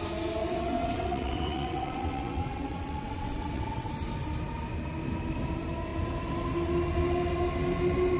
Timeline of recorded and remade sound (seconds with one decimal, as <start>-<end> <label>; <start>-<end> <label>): 0.0-0.4 recorded; 0.4-3.9 remade; 3.9-8.2 recorded